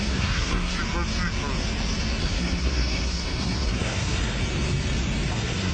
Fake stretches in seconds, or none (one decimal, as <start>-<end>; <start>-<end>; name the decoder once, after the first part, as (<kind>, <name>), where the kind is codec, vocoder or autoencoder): 0.0-0.8 (codec, SNAC); 2.2-4.4; 5.3-5.7